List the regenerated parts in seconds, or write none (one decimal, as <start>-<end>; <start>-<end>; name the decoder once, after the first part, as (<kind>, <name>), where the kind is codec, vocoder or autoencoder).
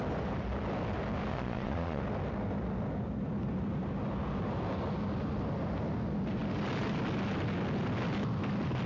1.3-2.0 (vocoder, Vocos)